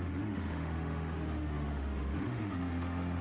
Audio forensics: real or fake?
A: fake